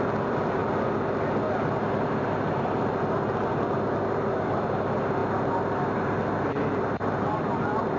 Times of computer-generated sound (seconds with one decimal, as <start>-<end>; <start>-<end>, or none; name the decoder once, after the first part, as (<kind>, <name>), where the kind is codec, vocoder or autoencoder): none